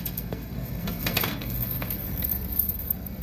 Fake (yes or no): yes